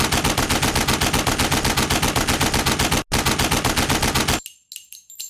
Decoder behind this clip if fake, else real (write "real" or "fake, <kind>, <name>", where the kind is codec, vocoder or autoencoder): real